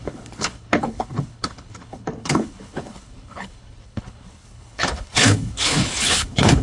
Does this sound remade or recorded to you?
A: remade